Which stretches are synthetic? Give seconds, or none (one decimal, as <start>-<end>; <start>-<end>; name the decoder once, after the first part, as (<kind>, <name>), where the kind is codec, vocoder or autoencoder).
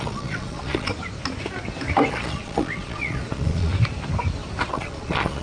0.0-0.9 (vocoder, Vocos); 2.1-3.7; 4.7-5.4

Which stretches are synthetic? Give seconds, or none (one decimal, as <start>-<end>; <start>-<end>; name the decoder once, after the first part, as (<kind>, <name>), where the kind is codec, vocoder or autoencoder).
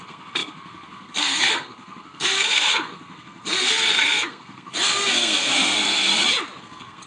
0.0-6.1 (codec, SNAC); 6.6-7.1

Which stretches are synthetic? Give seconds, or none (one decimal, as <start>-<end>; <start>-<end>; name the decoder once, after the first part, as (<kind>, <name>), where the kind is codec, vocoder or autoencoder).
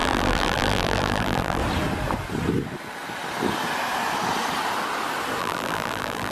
0.0-1.6 (vocoder, BigVGAN v2); 5.4-6.3